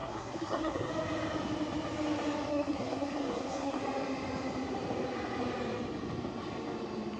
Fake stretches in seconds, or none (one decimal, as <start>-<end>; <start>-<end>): 0.0-0.9; 2.5-3.8